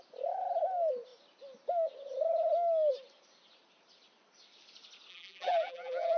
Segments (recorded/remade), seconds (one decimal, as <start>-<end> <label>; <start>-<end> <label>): 0.0-5.1 recorded; 5.1-6.2 remade